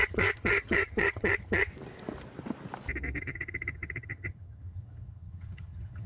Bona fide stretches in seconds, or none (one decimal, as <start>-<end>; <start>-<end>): 1.7-3.2